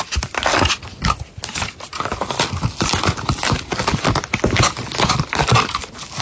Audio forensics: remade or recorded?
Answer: recorded